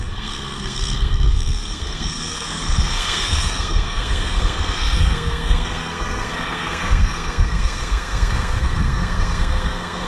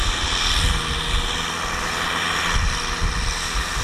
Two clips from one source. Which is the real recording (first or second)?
second